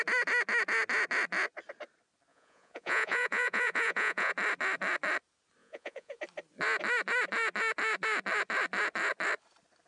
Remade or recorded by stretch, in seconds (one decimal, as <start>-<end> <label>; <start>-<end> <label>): 0.0-2.3 recorded; 2.3-4.3 remade; 4.3-5.6 recorded; 5.6-6.2 remade; 6.2-9.9 recorded